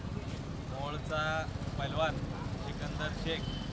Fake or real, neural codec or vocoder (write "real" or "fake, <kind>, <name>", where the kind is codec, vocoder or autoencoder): real